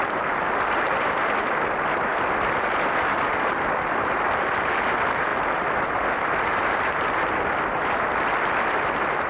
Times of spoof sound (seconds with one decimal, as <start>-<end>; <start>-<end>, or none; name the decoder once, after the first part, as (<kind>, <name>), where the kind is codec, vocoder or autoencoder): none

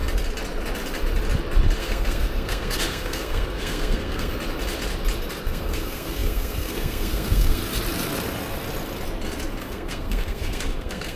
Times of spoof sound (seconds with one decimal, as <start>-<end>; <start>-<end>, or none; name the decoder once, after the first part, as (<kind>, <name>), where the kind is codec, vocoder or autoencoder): 1.8-4.3 (codec, SNAC); 5.4-7.6; 9.6-11.2

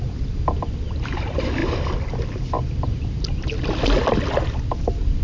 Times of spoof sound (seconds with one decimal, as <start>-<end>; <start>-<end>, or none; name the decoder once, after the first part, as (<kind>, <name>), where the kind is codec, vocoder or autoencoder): none

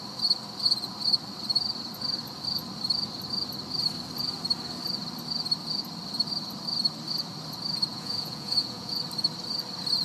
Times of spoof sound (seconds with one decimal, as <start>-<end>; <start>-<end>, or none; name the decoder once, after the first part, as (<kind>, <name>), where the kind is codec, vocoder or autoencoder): 7.9-9.0 (vocoder, Vocos)

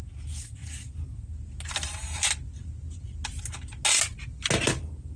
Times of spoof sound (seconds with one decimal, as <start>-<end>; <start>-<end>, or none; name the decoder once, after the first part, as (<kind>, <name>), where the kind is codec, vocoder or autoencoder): none

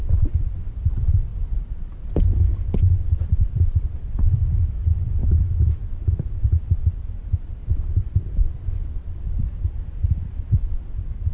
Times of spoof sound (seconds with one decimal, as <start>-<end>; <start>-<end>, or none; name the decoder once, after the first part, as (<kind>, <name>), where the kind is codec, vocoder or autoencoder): 0.0-5.2 (vocoder, BigVGAN v2); 7.5-11.3

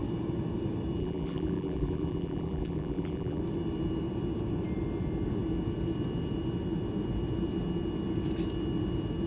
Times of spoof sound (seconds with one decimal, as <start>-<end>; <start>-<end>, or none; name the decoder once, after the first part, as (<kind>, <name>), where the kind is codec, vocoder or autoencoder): 1.0-3.4 (vocoder, BigVGAN v2)